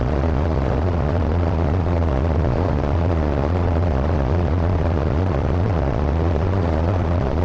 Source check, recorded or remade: remade